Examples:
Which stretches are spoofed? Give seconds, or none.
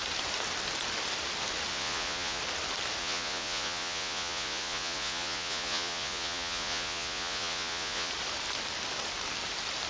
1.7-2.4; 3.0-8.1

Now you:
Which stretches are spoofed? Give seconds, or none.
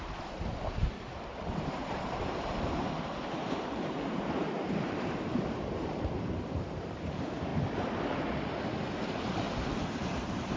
0.0-7.5; 9.0-10.6